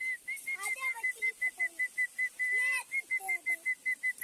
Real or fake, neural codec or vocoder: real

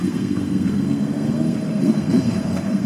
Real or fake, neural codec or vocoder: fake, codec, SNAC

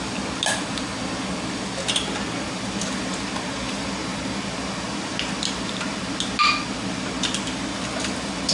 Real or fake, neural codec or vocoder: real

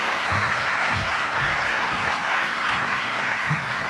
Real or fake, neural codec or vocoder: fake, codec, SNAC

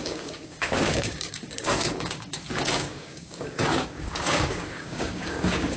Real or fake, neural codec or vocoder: fake, codec, DAC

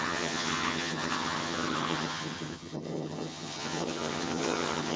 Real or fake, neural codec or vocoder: fake, vocoder, HiFi-GAN